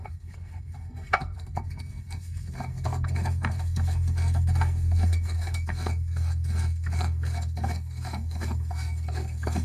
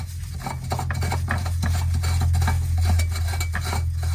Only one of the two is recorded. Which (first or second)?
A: second